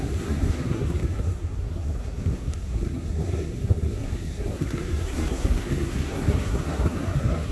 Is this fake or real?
fake